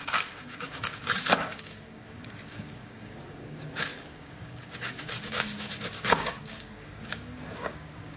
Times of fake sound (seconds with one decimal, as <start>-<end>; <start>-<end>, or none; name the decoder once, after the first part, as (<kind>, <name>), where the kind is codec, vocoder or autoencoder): 0.0-8.2 (codec, DAC)